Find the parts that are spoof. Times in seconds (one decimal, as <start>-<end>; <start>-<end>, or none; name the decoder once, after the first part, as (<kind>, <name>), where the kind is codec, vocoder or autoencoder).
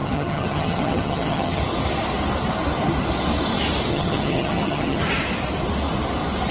0.0-1.6 (vocoder, HiFi-GAN); 3.9-5.0